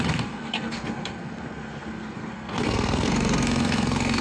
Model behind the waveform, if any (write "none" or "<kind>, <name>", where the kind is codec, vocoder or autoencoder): codec, SNAC